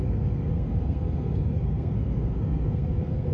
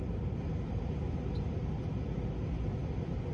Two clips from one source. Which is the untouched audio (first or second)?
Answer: second